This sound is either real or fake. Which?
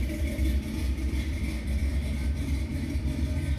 fake